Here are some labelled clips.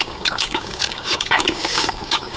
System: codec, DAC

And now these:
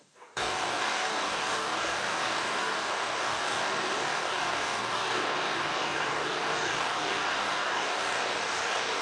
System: codec, DAC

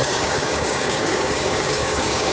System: codec, DAC